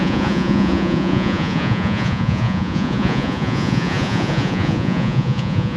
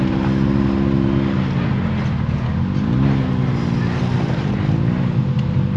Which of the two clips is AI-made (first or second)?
first